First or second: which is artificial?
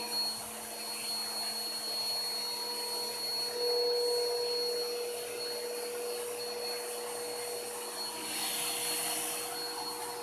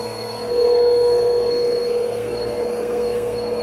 second